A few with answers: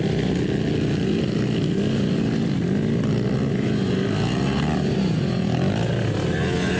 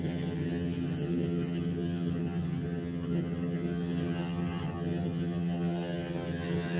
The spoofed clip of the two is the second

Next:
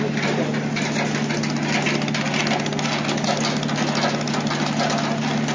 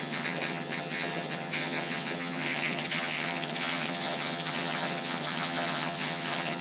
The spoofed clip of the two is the second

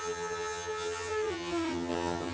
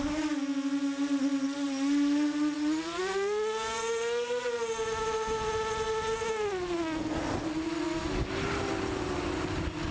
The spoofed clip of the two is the first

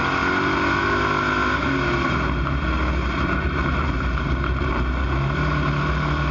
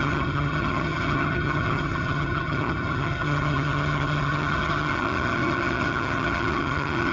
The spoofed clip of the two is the second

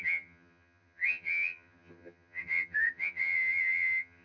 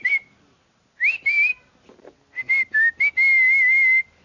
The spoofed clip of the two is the first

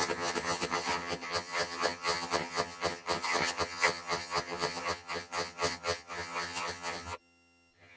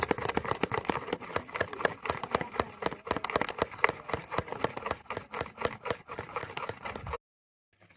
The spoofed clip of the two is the first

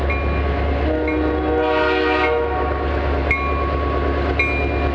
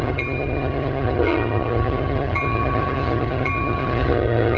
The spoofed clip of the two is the second